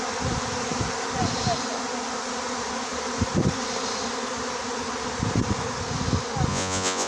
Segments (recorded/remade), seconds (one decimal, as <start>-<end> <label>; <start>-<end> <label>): 0.0-6.5 recorded; 6.5-7.1 remade

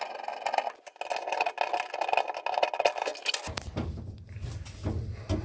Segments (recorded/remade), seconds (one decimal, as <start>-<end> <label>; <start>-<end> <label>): 0.0-5.4 recorded

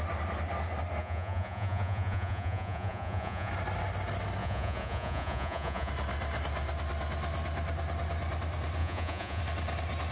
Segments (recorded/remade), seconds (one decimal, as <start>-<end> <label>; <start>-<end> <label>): 0.0-1.0 recorded; 1.0-3.5 remade; 3.5-4.4 recorded; 4.4-5.9 remade; 5.9-8.8 recorded; 8.8-9.4 remade; 9.4-10.1 recorded

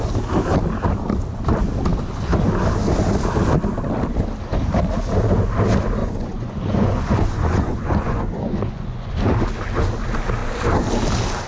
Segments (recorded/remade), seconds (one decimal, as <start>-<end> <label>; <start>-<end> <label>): 0.0-6.0 recorded; 6.0-9.1 remade; 9.1-11.5 recorded

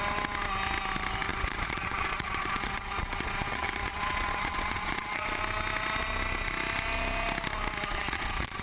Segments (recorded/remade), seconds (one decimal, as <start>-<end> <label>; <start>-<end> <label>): 0.0-1.3 recorded; 1.3-5.4 remade; 5.4-7.9 recorded; 7.9-8.6 remade

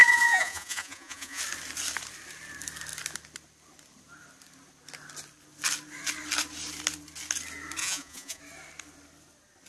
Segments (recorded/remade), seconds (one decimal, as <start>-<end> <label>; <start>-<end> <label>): 0.0-1.4 remade; 1.4-7.8 recorded; 7.8-8.4 remade; 8.4-9.7 recorded